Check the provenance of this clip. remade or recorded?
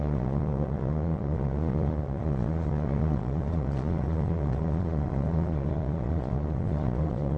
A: remade